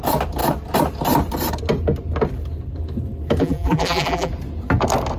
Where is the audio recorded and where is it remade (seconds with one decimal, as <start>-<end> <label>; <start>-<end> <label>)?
0.0-3.4 recorded; 3.4-4.3 remade; 4.3-5.2 recorded

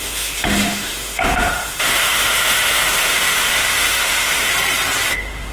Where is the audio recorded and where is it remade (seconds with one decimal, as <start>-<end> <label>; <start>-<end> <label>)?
0.0-4.5 remade; 4.5-5.1 recorded; 5.1-5.5 remade

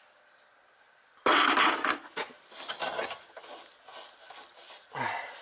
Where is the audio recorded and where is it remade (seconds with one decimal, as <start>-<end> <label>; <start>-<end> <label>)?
0.0-5.4 recorded